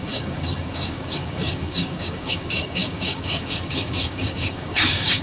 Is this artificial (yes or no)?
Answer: yes